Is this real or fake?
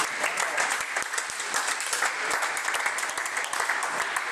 real